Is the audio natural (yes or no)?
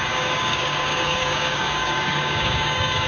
no